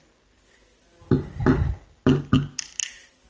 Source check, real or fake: real